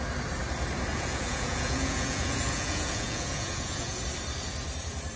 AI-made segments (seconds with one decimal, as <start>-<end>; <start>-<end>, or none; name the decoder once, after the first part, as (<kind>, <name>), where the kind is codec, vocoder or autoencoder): 0.9-4.0 (vocoder, Vocos)